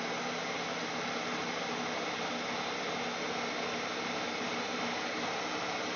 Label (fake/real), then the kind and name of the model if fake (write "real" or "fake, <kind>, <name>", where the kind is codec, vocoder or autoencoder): real